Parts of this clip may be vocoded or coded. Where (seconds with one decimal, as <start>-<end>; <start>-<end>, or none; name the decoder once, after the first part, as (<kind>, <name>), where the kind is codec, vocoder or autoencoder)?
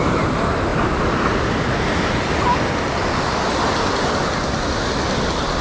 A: none